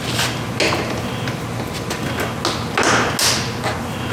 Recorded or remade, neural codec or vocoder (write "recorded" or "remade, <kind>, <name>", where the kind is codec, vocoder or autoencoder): recorded